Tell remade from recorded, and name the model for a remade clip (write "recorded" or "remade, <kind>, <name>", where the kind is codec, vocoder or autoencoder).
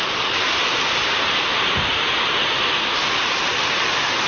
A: remade, vocoder, BigVGAN v2